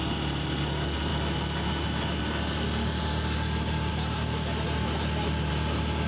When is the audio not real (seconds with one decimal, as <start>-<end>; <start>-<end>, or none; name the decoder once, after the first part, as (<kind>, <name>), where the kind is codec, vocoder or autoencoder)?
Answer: none